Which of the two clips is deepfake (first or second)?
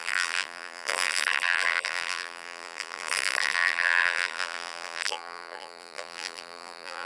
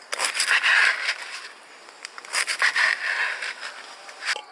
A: first